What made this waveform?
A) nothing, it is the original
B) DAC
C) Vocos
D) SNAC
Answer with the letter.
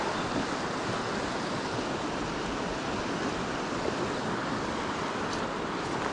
A